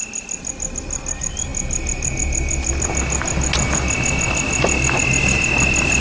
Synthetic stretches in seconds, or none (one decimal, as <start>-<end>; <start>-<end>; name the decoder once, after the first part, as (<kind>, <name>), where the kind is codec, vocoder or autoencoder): none